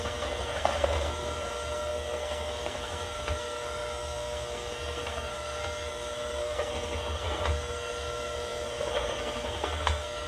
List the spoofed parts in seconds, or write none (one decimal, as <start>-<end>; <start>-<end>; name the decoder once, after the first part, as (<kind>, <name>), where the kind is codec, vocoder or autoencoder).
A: 0.0-10.3 (codec, SNAC)